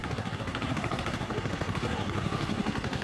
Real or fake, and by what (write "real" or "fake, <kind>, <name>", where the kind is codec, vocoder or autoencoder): fake, codec, SNAC